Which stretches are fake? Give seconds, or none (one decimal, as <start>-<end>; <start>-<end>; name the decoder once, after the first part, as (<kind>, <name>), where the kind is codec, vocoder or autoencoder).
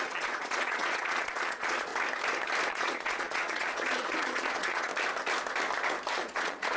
0.0-1.9 (vocoder, Vocos); 2.7-4.9; 6.1-6.8